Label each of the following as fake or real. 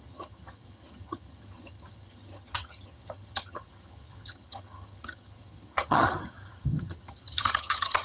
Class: fake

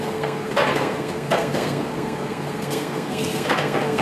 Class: fake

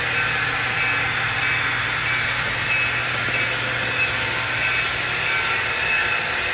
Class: real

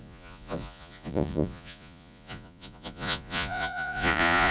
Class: fake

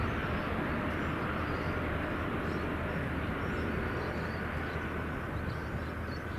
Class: real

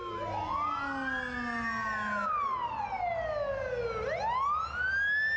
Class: real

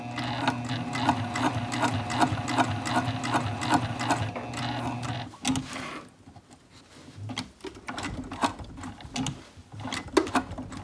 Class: real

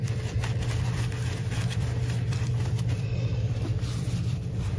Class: fake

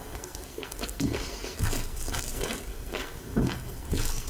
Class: fake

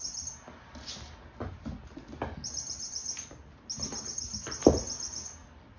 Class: real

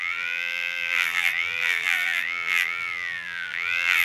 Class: fake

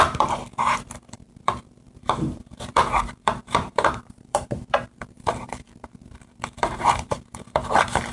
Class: fake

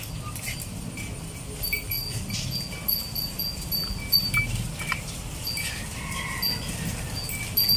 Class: real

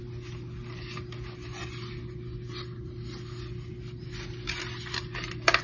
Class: real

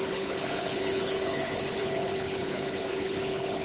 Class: fake